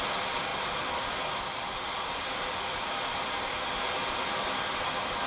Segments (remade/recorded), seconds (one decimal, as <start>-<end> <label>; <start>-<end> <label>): 0.0-5.3 recorded